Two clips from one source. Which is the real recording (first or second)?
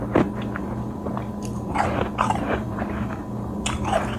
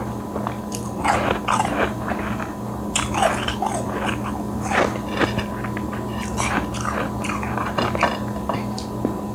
second